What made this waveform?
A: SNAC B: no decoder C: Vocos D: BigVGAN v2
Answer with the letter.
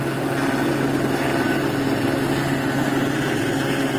B